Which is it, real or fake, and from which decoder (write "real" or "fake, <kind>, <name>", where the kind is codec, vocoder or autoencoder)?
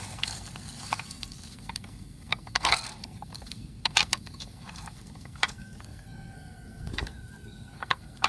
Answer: fake, codec, SNAC